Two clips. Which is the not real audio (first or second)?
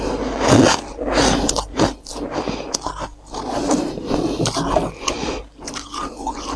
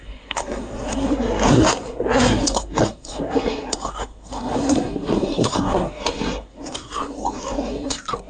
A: second